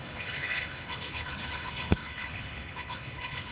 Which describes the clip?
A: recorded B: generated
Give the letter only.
B